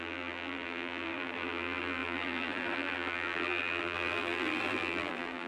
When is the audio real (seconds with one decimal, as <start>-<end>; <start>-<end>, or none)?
none